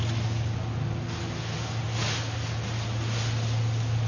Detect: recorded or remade recorded